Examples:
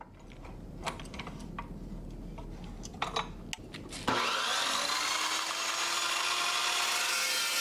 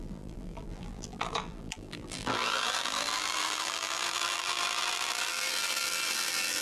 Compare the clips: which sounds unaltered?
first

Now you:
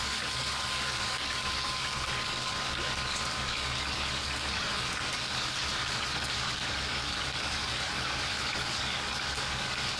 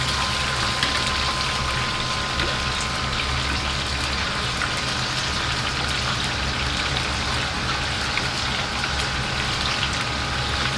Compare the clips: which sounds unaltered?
second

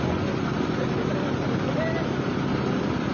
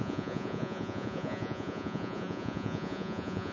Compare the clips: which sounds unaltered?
first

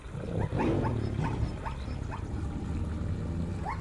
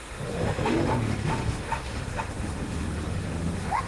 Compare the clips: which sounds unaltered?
first